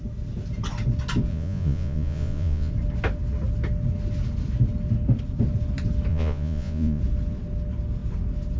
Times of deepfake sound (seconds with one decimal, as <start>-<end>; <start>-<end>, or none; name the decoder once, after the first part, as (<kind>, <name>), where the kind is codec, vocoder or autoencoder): 1.3-2.7 (vocoder, Vocos); 6.1-7.0